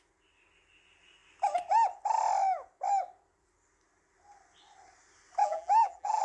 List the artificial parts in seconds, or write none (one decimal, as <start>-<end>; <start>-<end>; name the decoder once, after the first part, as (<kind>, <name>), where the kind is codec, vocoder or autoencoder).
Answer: 5.4-6.2 (vocoder, BigVGAN v2)